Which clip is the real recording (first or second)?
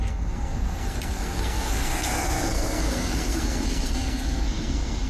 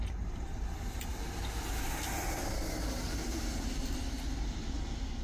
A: second